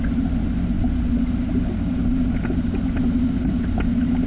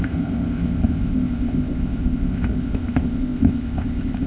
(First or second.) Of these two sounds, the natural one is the first